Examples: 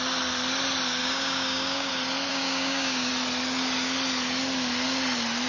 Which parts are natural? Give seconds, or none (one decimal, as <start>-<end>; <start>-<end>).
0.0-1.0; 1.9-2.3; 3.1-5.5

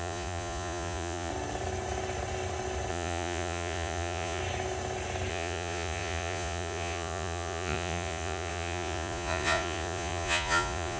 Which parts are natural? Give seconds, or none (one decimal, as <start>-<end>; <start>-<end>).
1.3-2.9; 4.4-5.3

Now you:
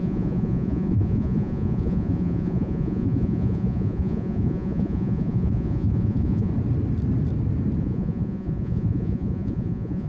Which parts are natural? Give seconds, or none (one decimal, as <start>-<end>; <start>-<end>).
6.5-7.8

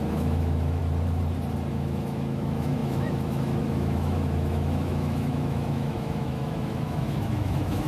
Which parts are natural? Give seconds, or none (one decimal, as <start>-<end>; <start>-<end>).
0.8-1.7

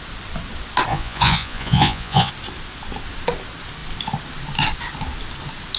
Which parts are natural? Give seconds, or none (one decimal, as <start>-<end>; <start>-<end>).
0.0-0.9; 2.3-5.8

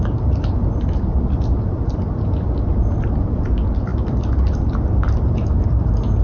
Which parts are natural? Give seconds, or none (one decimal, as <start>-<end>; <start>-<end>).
none

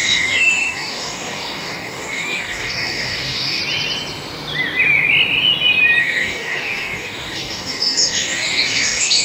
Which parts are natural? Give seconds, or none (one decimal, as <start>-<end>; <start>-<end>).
3.6-6.0